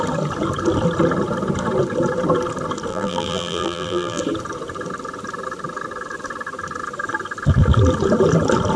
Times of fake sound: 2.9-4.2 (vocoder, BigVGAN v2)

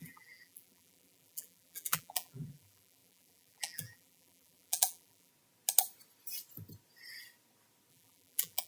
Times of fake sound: 0.0-5.3 (vocoder, BigVGAN v2); 7.9-8.7

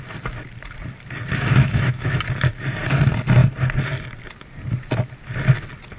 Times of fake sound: 1.6-2.2 (autoencoder, DAC-VAE)